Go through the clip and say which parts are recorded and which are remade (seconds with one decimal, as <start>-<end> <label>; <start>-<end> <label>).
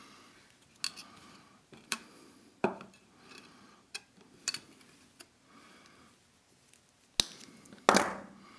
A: 0.0-1.2 recorded; 1.2-4.0 remade; 4.0-8.6 recorded